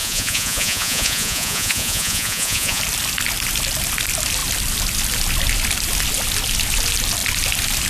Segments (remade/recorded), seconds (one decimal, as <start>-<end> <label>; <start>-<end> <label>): 0.0-2.8 remade; 2.8-7.9 recorded